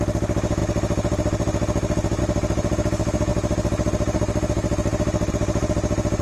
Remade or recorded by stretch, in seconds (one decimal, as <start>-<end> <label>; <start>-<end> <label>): 0.0-6.2 recorded